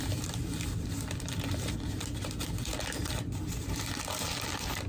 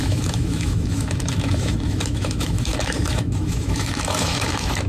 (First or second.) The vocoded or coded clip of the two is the second